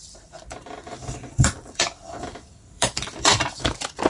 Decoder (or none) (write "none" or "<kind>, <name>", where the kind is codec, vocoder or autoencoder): vocoder, BigVGAN v2